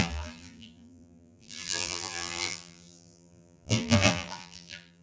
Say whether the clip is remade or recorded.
remade